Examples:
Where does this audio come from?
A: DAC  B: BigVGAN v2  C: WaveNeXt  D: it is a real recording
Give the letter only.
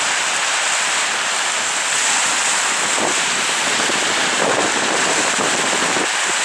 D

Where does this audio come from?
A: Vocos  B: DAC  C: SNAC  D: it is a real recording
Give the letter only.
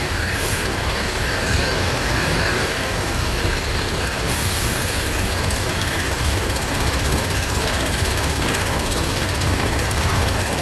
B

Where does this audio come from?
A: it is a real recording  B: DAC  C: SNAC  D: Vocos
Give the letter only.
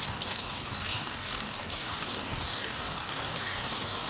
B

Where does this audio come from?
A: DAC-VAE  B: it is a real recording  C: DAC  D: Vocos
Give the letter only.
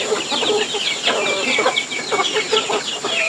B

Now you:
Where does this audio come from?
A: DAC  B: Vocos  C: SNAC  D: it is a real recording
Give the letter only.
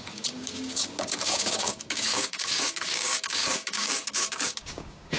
A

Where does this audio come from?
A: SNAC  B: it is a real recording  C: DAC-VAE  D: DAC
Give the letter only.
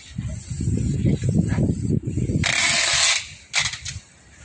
B